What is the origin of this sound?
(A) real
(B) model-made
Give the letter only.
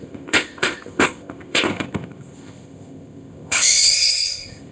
B